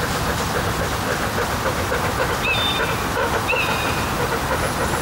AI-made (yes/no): yes